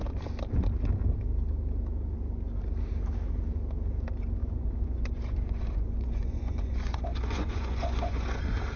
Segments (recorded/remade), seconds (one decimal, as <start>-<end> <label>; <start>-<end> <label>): 0.0-4.4 recorded; 4.4-8.4 remade; 8.4-8.8 recorded